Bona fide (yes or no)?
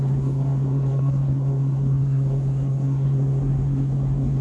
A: no